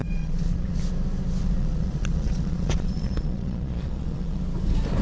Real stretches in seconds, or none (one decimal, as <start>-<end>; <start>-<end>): 0.8-1.4; 4.4-5.0